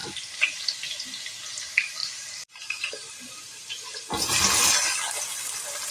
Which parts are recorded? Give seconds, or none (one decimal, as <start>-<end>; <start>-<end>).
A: 0.6-2.0; 4.0-5.9